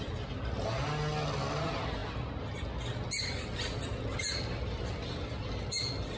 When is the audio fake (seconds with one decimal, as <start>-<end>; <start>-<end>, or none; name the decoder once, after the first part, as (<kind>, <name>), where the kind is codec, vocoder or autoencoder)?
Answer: none